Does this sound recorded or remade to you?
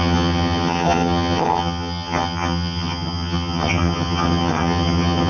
remade